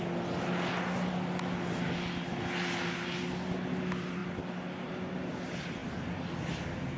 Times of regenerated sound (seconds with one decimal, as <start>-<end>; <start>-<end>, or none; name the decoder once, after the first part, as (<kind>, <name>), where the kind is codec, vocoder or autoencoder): none

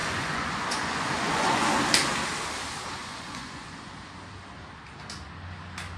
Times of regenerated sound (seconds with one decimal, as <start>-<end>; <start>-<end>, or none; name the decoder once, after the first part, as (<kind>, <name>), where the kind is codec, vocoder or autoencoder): 0.0-1.7 (vocoder, Vocos); 3.0-3.9

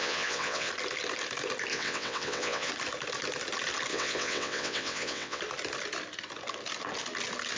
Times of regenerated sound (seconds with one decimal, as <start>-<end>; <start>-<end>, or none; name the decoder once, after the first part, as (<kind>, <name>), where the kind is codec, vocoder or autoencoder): 0.0-0.7 (vocoder, WaveNeXt); 1.7-2.7; 3.9-5.4

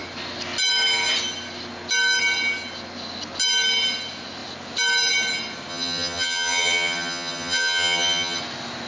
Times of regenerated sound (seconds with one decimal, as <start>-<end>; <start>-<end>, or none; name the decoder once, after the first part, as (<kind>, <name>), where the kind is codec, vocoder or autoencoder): 5.7-8.4 (vocoder, HiFi-GAN)

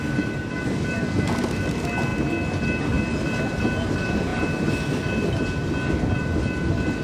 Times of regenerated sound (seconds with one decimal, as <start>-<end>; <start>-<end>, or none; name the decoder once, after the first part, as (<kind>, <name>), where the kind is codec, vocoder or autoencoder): none